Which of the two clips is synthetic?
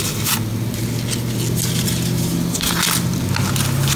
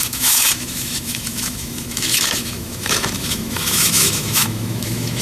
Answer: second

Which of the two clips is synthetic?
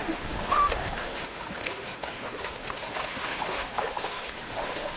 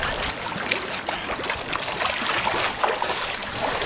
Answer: first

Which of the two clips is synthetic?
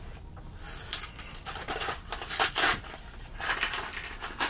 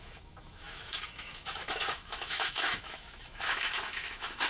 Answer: second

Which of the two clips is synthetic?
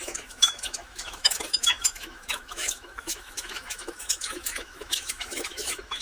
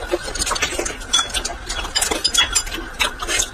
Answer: first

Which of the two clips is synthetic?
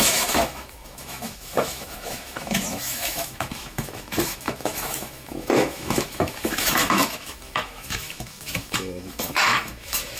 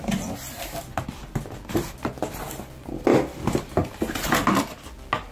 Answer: first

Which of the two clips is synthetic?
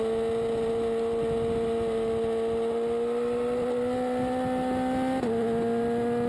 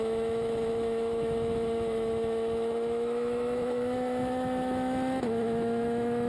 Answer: second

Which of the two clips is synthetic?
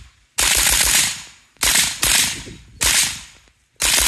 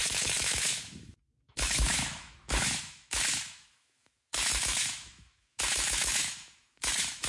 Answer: second